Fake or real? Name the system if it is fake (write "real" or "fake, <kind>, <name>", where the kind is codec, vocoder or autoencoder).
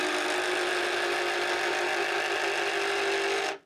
real